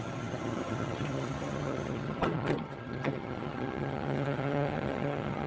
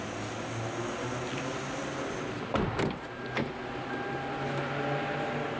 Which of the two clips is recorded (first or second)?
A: second